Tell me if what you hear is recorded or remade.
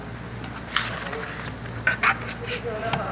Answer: recorded